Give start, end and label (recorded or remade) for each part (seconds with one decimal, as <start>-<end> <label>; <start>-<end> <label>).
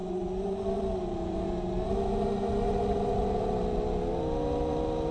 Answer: 0.0-5.1 recorded